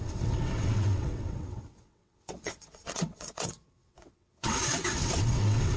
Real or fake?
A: fake